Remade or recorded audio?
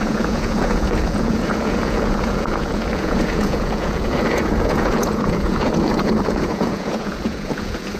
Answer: remade